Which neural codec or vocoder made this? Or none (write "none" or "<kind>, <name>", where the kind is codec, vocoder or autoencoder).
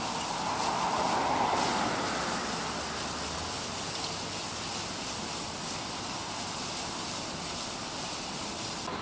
none